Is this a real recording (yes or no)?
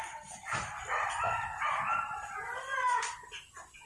yes